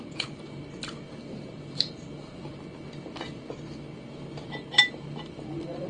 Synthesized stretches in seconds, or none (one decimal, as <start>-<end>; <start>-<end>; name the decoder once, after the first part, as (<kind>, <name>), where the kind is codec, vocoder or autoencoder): 0.0-0.6 (vocoder, BigVGAN v2); 1.2-2.5; 4.7-5.9

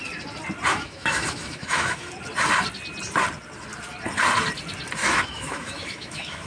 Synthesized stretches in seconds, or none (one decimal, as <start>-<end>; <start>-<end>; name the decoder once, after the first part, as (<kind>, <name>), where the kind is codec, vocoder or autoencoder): 0.7-2.1 (autoencoder, DAC-VAE); 5.0-6.5

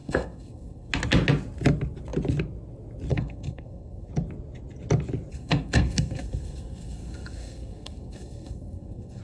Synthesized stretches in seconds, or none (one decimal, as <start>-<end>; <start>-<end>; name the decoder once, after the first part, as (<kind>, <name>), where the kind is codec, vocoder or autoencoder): 0.0-0.9 (codec, SNAC); 3.1-4.1; 5.3-9.2

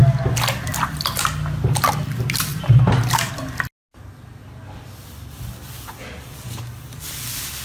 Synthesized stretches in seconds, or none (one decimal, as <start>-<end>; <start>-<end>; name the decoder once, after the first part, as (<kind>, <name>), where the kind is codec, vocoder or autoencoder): 2.5-3.3 (vocoder, BigVGAN v2)

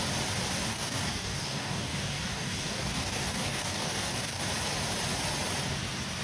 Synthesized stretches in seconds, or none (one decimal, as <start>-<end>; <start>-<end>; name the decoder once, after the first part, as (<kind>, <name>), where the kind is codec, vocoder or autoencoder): 0.7-4.4 (codec, DAC)

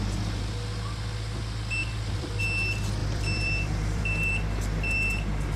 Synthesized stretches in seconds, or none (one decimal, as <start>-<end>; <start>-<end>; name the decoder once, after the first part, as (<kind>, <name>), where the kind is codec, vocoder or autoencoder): 1.8-2.4 (vocoder, BigVGAN v2); 3.0-4.3

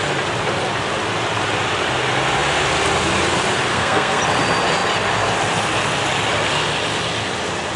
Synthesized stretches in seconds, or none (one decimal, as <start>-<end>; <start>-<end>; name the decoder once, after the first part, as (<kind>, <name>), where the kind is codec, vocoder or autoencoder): 3.7-4.2 (codec, SNAC)